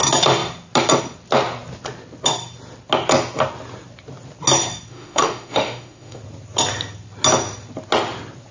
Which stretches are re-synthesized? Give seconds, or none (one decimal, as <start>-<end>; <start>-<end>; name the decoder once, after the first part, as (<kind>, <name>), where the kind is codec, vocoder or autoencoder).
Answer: 4.9-6.2 (autoencoder, DAC-VAE)